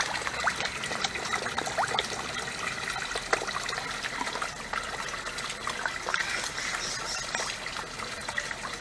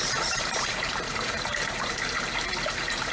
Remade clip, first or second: second